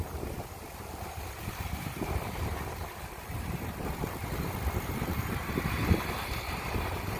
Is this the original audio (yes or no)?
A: no